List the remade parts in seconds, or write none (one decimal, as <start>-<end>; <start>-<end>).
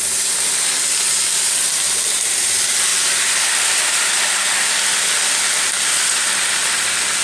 none